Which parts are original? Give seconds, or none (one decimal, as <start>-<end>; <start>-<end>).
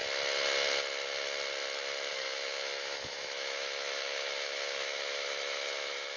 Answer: 0.0-2.1